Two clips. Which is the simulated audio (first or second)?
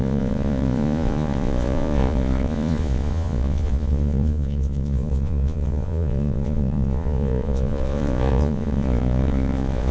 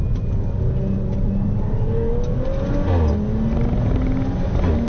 first